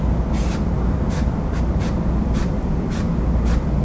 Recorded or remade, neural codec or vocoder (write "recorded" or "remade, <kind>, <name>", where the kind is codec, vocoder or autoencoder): recorded